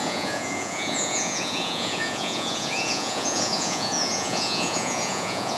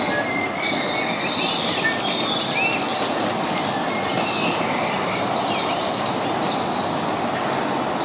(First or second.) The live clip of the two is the second